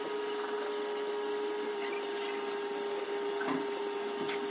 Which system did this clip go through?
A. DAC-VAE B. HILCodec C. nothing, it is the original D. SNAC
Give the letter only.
C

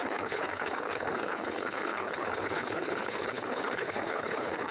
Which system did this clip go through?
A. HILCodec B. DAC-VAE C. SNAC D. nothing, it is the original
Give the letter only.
A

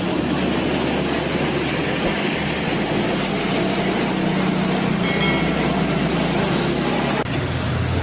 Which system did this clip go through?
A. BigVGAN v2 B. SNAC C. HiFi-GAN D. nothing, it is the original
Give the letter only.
D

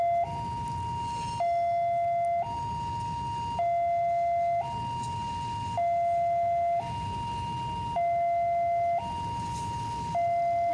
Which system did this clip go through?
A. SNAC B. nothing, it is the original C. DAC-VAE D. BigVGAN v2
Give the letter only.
B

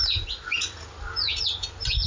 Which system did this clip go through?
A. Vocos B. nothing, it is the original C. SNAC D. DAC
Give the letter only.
B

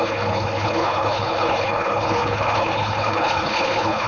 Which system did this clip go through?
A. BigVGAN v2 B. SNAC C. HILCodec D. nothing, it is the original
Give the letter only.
C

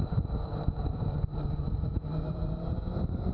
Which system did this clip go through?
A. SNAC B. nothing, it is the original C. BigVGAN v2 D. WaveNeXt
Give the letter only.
C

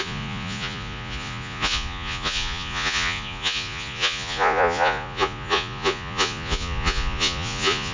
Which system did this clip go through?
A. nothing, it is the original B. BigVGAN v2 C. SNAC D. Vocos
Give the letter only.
D